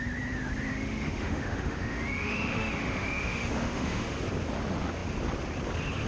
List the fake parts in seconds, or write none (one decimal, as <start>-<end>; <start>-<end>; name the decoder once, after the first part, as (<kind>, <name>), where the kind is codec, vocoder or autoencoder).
0.7-4.2 (autoencoder, DAC-VAE)